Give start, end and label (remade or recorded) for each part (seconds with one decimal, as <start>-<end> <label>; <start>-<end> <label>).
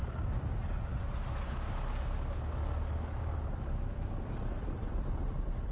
0.0-5.7 recorded